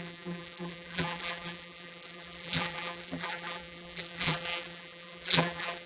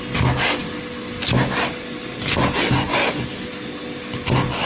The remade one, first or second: first